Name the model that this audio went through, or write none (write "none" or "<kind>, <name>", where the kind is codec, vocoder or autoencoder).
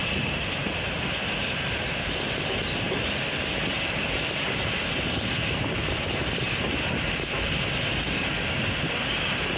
none